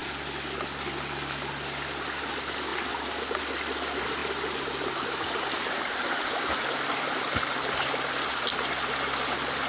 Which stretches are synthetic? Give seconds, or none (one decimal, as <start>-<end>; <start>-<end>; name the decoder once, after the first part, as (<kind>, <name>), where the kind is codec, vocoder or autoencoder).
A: none